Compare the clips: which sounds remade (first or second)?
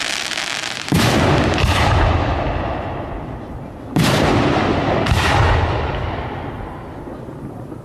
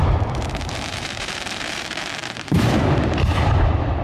second